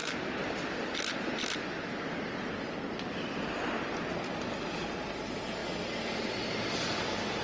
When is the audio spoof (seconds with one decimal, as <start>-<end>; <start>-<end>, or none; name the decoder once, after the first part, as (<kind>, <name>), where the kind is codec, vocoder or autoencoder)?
none